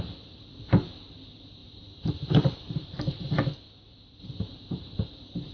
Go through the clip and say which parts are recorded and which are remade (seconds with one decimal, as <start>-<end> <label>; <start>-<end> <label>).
0.0-0.5 remade; 0.5-1.1 recorded; 1.1-3.5 remade; 3.5-4.2 recorded; 4.2-5.5 remade